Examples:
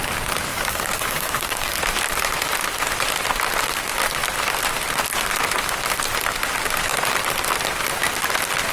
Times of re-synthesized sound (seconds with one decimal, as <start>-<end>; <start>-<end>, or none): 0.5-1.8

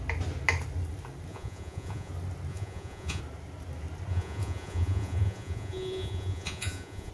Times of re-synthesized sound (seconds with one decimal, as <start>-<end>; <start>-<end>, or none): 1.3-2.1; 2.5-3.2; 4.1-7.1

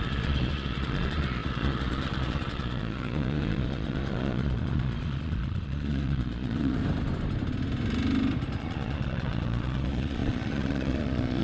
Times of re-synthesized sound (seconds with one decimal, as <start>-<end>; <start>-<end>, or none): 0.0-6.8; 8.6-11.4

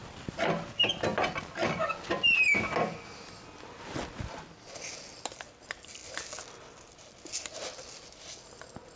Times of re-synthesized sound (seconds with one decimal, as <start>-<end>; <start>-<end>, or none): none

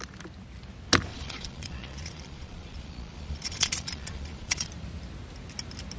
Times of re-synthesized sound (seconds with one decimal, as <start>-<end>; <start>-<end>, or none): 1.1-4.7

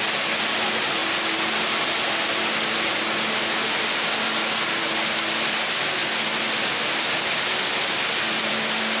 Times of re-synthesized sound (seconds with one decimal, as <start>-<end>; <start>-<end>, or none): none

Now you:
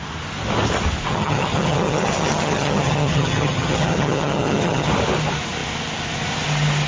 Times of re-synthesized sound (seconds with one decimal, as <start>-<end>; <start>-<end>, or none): 1.1-4.9